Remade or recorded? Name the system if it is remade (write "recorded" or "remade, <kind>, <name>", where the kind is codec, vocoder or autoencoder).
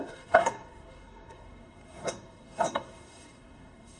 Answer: remade, codec, SNAC